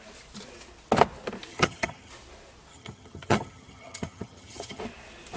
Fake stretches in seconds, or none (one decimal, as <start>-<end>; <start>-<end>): 1.5-2.1; 2.7-4.8